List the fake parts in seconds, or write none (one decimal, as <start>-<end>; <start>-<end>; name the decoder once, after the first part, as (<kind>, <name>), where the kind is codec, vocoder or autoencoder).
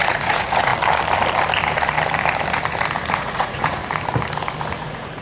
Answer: 0.0-0.7 (vocoder, Vocos); 3.1-3.8; 4.8-5.2